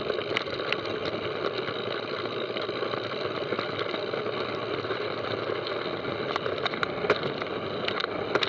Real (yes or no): yes